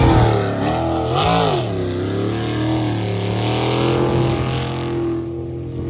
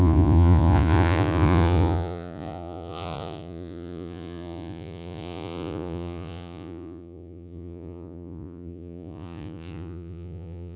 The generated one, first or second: second